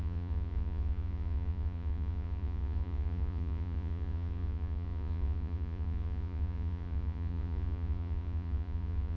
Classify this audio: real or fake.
fake